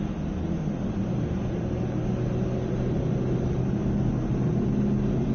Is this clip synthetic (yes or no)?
no